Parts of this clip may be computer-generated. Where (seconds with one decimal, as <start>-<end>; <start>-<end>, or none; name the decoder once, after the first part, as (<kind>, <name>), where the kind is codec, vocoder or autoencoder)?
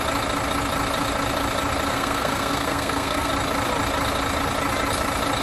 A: 1.9-3.3 (codec, SNAC)